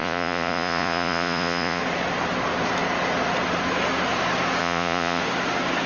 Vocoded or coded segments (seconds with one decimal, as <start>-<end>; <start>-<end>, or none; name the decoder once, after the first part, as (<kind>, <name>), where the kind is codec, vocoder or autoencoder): 0.0-1.8 (vocoder, Vocos); 4.6-5.2